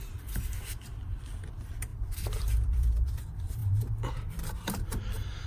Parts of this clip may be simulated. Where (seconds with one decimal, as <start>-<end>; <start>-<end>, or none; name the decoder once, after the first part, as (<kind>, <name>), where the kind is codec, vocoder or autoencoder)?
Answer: 0.0-5.5 (vocoder, BigVGAN v2)